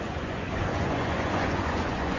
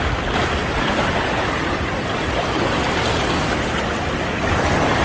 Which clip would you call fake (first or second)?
first